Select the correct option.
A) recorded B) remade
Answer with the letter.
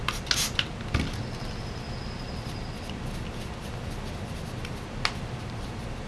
A